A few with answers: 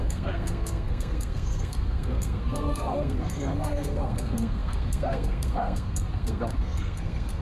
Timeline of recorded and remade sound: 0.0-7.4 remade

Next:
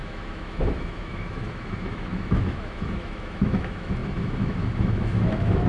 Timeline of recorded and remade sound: 0.0-5.7 remade

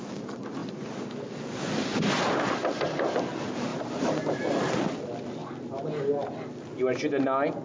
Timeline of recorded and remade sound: 0.0-3.7 recorded; 3.7-4.8 remade; 4.8-7.6 recorded